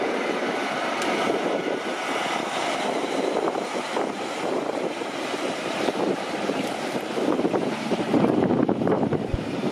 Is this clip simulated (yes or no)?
yes